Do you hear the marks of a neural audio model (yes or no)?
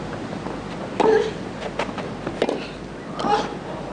no